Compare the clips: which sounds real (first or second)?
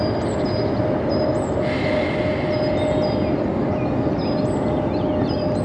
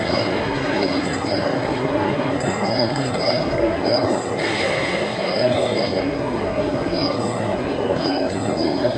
first